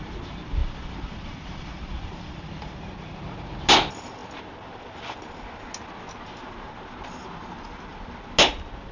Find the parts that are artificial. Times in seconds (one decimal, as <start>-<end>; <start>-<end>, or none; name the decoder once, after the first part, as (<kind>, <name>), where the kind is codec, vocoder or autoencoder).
0.6-2.7 (vocoder, BigVGAN v2)